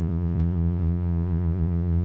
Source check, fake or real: fake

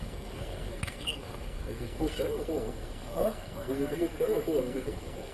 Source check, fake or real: fake